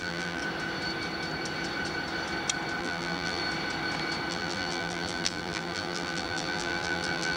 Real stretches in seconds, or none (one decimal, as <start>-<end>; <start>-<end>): 0.4-2.8; 3.4-4.3

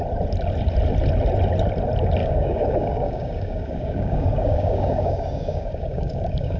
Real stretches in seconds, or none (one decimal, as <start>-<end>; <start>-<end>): 0.0-2.2

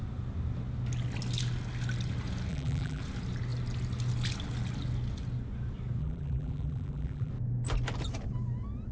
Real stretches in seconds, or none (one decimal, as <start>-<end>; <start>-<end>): 0.0-2.5; 3.0-6.0; 7.3-8.9

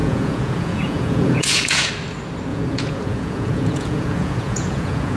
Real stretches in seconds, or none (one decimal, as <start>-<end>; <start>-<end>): 1.9-2.5